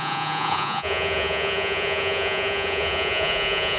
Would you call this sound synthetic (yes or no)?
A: yes